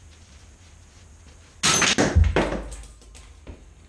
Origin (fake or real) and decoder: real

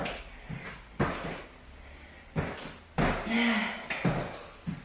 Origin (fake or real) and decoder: real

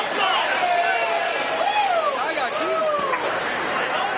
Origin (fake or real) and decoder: real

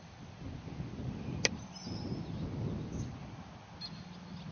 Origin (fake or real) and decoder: real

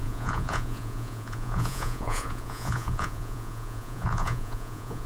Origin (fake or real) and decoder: fake, vocoder, Vocos